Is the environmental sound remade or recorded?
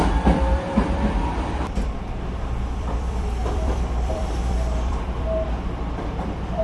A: remade